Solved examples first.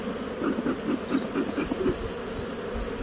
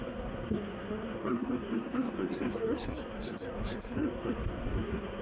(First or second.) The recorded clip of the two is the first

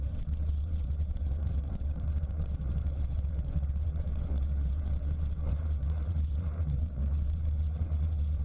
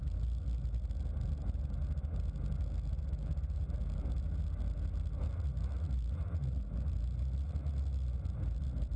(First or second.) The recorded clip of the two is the second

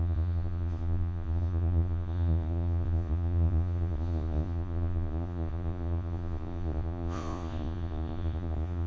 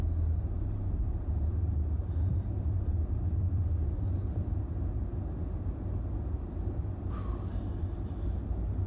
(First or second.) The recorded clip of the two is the second